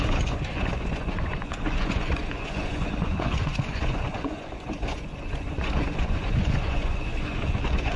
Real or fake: fake